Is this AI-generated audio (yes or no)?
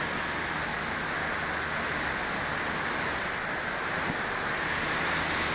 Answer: no